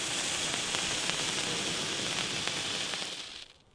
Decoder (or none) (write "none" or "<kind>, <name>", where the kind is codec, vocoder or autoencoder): none